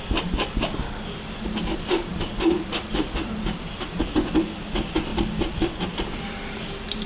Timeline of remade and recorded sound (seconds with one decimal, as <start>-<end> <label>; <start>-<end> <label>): 0.0-2.1 recorded; 2.1-4.0 remade; 4.0-5.1 recorded; 5.1-6.2 remade; 6.2-7.1 recorded